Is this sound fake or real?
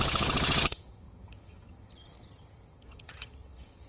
fake